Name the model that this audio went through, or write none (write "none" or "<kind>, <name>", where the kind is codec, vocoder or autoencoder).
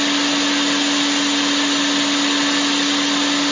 none